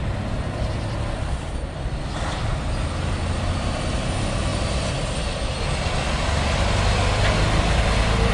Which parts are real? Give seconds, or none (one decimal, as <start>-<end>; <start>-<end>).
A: 0.0-8.3

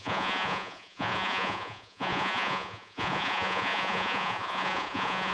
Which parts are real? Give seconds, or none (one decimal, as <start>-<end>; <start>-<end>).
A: none

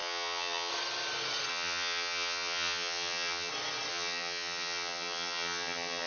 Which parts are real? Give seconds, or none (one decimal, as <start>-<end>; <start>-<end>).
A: 0.7-1.5; 3.5-3.9

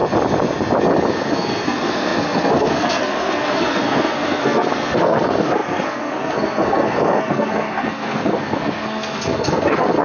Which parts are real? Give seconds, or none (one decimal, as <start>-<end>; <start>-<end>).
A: 0.0-1.1